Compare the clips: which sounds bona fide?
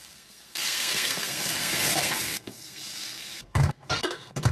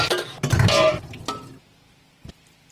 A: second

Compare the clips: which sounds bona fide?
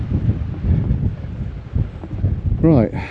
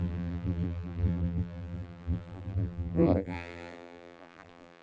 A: first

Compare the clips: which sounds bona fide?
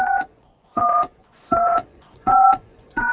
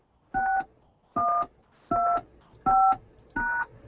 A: second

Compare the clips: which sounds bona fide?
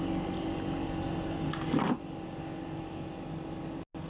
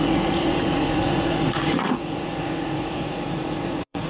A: first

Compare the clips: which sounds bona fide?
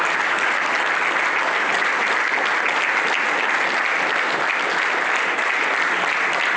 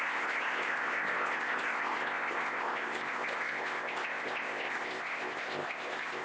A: first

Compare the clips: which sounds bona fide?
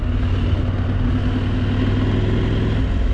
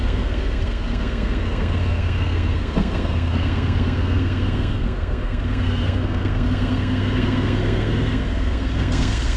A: first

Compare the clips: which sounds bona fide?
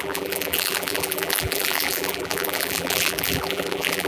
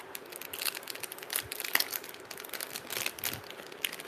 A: second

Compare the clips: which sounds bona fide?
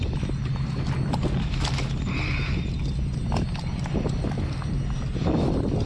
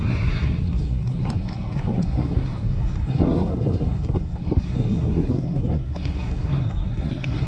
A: first